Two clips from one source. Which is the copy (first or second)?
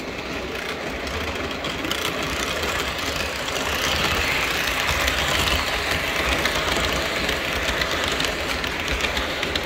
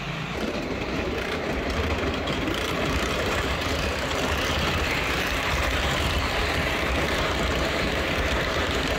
second